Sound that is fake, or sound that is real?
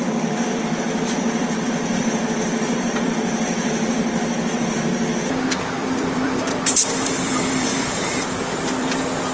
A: fake